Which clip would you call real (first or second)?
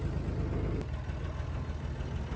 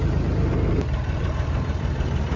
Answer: first